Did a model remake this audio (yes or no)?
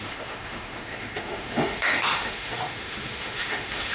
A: yes